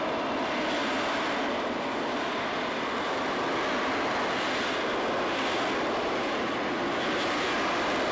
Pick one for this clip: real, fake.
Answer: real